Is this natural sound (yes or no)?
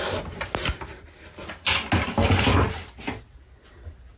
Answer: yes